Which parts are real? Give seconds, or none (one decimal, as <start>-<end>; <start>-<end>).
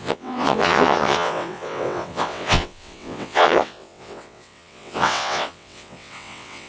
none